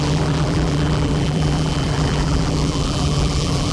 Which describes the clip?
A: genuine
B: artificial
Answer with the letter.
B